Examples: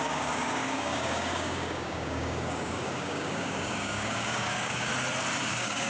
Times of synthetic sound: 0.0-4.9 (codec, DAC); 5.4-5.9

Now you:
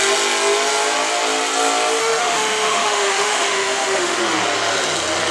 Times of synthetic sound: 2.0-4.2 (autoencoder, DAC-VAE)

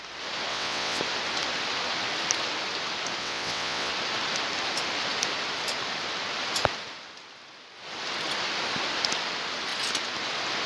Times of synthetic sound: 0.5-1.0 (vocoder, WaveNeXt); 3.2-3.9